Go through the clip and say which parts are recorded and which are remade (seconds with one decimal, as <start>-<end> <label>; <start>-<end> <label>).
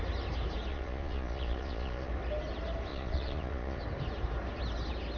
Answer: 0.0-0.7 recorded; 0.7-2.1 remade; 2.1-2.9 recorded; 2.9-3.8 remade; 3.8-5.2 recorded